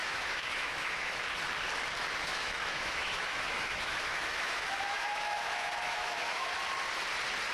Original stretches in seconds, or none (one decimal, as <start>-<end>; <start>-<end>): 1.2-2.3; 6.5-7.5